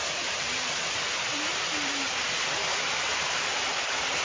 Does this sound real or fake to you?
fake